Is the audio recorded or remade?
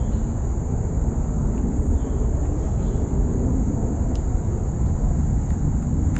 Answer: recorded